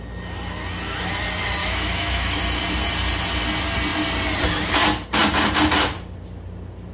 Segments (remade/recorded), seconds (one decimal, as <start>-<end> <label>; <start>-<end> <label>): 0.0-1.6 recorded; 1.6-2.4 remade; 2.4-6.9 recorded